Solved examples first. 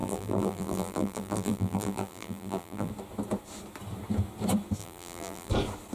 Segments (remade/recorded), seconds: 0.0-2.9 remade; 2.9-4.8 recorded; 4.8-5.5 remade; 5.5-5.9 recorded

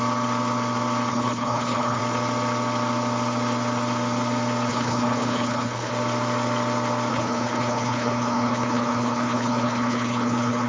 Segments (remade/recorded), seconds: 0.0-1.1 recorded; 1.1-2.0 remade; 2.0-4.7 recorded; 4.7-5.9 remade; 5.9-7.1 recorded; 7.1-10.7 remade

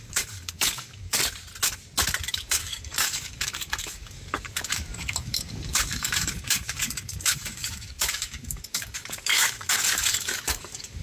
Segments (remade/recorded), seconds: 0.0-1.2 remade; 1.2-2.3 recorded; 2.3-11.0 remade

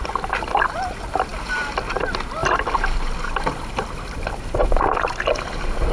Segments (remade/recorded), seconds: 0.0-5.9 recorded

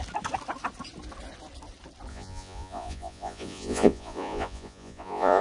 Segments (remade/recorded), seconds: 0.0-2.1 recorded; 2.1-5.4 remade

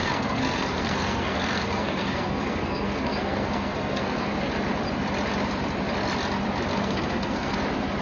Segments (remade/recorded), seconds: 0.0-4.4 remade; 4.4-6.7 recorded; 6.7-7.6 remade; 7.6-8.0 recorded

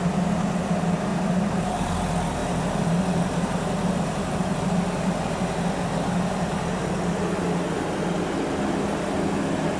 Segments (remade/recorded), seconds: 0.0-1.1 recorded; 1.1-1.9 remade; 1.9-2.4 recorded; 2.4-4.7 remade; 4.7-9.8 recorded

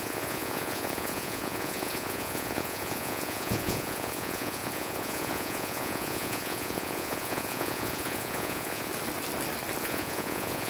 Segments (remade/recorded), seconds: 0.0-8.9 remade; 8.9-9.8 recorded; 9.8-10.7 remade